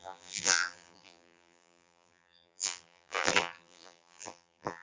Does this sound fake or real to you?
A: fake